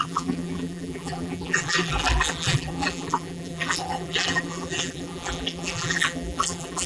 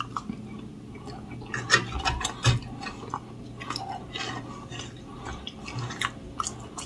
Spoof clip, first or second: first